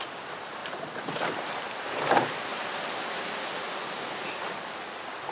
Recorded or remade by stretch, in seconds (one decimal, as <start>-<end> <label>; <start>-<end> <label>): 0.0-0.6 recorded; 0.6-1.9 remade; 1.9-2.5 recorded; 2.5-3.5 remade; 3.5-5.3 recorded